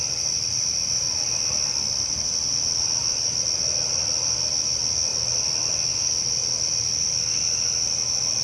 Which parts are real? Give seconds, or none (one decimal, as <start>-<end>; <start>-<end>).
0.0-8.4